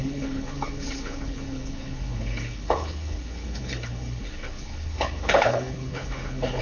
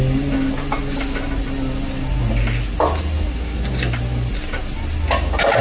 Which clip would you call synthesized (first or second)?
first